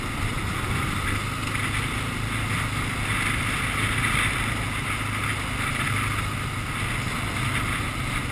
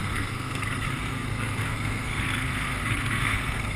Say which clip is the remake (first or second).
second